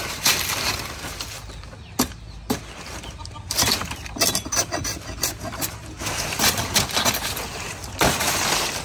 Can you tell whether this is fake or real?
real